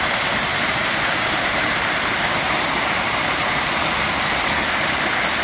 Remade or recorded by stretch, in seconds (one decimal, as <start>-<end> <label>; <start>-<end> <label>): 0.0-0.5 recorded; 0.5-3.7 remade; 3.7-5.4 recorded